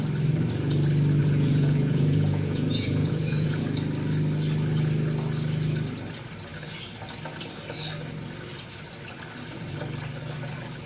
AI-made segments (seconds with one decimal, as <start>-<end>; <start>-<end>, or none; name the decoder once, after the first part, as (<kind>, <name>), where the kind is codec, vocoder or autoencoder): 1.2-3.6 (vocoder, Vocos)

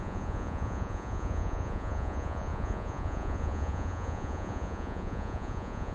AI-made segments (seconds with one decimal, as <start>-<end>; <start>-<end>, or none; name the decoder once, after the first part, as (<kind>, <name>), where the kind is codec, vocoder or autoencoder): 0.0-5.9 (vocoder, Vocos)